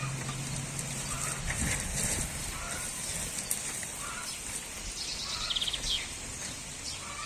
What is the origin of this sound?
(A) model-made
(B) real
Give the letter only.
B